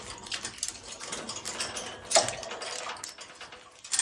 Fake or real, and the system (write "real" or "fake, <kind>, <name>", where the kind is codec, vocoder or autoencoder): real